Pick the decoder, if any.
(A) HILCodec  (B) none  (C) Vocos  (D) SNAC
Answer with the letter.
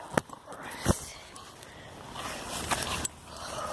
B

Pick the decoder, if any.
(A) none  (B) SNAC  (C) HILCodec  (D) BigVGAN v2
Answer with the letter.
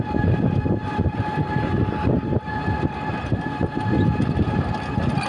A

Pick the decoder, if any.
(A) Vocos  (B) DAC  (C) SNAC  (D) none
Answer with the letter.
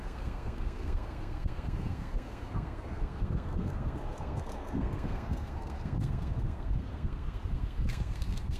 C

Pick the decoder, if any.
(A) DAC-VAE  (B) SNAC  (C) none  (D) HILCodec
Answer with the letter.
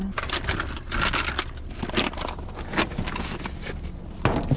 C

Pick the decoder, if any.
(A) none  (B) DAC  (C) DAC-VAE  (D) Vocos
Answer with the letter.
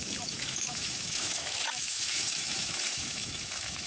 C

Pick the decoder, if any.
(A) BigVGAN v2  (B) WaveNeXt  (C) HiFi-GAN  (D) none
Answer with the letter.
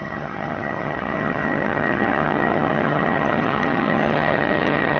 C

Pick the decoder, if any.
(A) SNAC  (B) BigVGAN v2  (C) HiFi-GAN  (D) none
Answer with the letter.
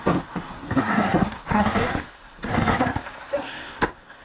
A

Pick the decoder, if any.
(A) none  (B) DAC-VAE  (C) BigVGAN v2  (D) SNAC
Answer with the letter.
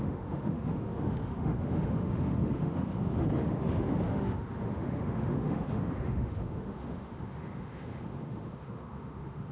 B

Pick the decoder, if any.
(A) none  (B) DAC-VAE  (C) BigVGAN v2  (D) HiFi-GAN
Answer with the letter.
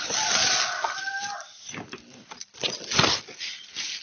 A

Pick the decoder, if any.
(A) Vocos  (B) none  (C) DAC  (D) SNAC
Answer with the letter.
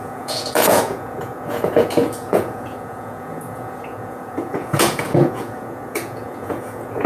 A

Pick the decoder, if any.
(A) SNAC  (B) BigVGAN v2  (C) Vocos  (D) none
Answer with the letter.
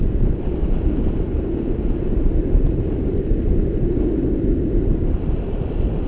B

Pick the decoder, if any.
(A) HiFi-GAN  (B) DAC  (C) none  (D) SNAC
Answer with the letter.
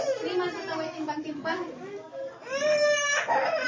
C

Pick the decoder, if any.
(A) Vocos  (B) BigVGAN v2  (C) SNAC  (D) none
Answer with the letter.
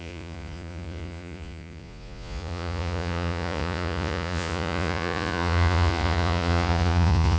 A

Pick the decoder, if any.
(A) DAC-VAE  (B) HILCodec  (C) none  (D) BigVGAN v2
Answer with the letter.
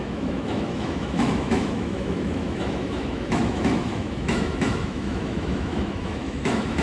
A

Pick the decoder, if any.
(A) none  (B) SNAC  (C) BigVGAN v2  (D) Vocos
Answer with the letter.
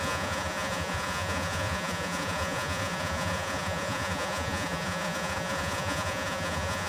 D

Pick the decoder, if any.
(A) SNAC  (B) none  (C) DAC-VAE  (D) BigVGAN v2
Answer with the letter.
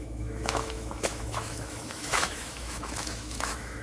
C